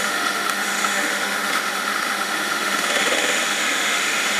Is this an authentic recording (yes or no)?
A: no